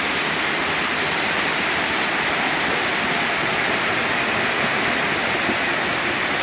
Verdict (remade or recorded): recorded